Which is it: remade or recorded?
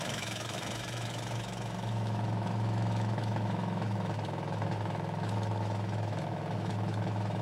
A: remade